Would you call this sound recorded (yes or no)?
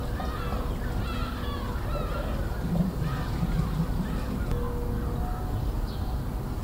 yes